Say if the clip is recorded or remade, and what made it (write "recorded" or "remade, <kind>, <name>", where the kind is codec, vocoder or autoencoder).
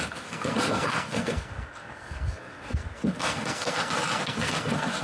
remade, codec, SNAC